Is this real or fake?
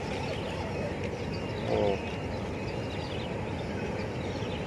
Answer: real